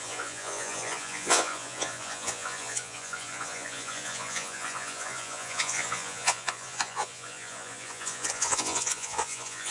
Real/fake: fake